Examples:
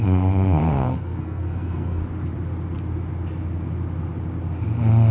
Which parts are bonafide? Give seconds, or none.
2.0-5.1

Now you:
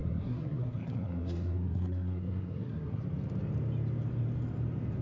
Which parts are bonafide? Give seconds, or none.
3.0-5.0

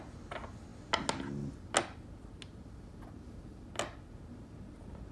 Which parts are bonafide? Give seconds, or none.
0.0-5.1

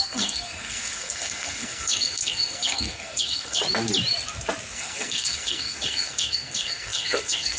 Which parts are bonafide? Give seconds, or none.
3.6-4.7

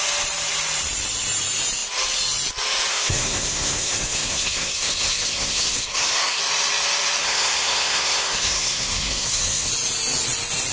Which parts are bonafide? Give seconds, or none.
0.0-2.9; 6.4-7.2; 9.7-10.7

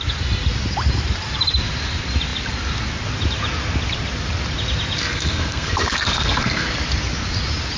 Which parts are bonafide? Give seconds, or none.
0.0-5.0; 6.7-7.8